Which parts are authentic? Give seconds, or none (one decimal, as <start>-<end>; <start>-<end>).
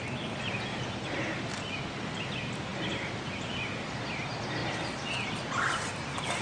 0.0-6.4